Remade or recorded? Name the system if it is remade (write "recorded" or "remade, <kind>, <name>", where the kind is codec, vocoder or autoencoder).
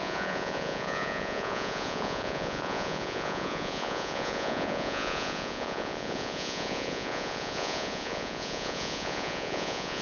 remade, vocoder, Vocos